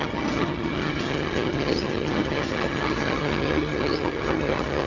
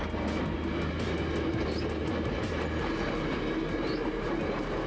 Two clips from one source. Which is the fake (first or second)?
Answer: first